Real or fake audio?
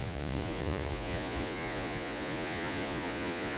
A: fake